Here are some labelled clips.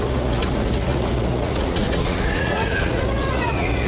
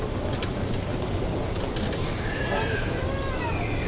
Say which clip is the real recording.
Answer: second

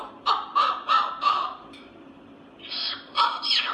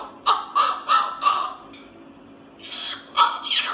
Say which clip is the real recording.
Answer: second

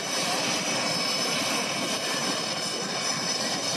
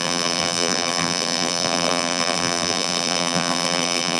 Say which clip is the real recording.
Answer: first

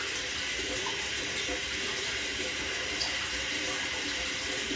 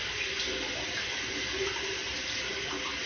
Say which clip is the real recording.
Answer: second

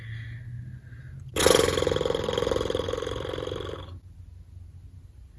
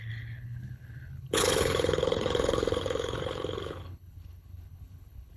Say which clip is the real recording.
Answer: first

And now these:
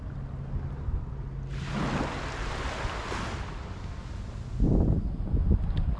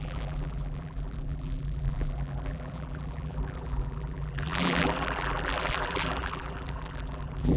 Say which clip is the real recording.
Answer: first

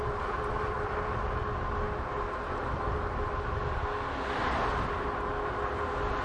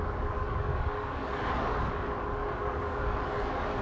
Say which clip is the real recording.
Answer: first